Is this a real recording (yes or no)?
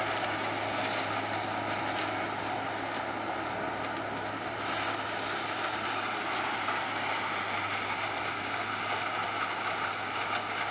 yes